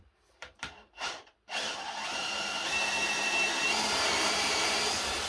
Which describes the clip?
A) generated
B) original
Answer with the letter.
A